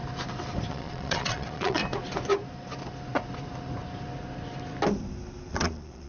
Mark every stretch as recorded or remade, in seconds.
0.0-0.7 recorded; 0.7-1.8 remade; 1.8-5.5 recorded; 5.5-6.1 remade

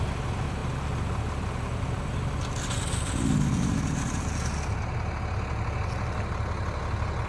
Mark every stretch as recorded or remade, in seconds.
0.0-7.3 recorded

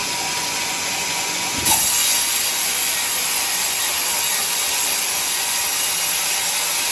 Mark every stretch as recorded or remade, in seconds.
0.0-3.8 remade; 3.8-4.4 recorded; 4.4-5.6 remade; 5.6-6.9 recorded

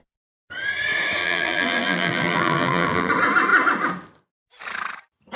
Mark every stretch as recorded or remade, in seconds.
0.0-1.2 recorded; 1.2-3.1 remade; 3.1-5.4 recorded

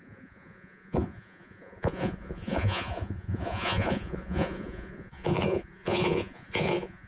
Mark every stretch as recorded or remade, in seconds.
0.0-7.1 remade

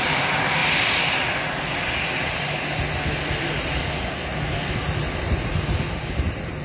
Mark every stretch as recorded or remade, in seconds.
0.0-6.6 recorded

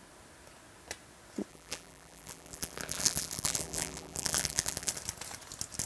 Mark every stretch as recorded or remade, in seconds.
0.0-1.5 recorded; 1.5-4.9 remade; 4.9-5.9 recorded

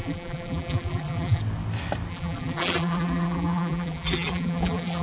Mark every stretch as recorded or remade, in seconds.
0.0-1.4 remade; 1.4-2.1 recorded; 2.1-5.0 remade